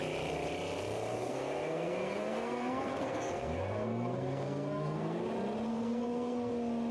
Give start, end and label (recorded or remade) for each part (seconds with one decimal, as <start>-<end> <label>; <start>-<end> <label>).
0.0-1.1 recorded; 1.1-5.2 remade; 5.2-5.7 recorded; 5.7-6.5 remade; 6.5-6.9 recorded